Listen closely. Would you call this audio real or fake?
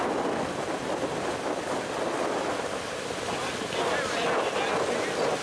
real